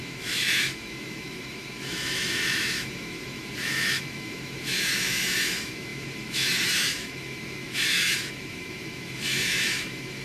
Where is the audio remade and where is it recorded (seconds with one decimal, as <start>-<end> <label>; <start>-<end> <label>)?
0.0-10.2 remade